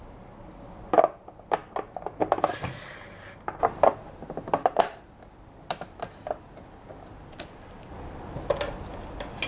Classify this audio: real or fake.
real